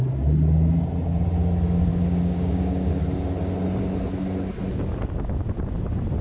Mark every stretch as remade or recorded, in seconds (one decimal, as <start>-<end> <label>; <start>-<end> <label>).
0.0-1.9 recorded; 1.9-2.9 remade; 2.9-6.2 recorded